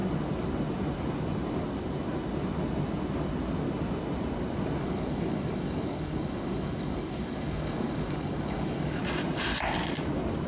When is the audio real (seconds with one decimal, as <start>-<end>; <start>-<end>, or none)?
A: 0.0-4.8; 9.0-10.5